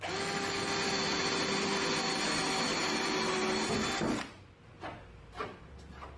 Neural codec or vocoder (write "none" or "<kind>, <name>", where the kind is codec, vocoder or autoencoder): none